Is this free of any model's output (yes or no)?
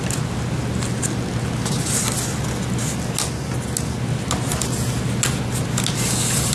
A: yes